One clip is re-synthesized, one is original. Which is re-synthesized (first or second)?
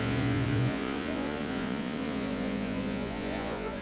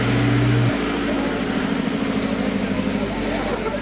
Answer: first